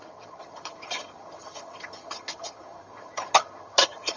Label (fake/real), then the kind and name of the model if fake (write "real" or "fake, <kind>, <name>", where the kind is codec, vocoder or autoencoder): fake, vocoder, HiFi-GAN